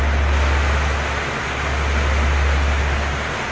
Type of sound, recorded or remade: recorded